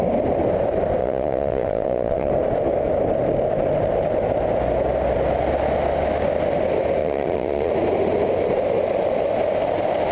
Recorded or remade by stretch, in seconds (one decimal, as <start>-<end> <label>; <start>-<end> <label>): 0.0-1.0 recorded; 1.0-2.3 remade; 2.3-7.0 recorded; 7.0-7.7 remade; 7.7-10.1 recorded